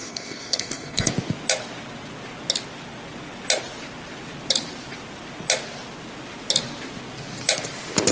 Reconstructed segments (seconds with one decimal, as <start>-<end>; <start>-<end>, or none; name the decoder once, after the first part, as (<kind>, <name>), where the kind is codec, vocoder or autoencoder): 0.0-1.1 (codec, SNAC)